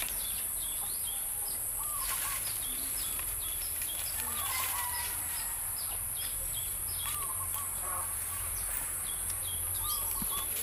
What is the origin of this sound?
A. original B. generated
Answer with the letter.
B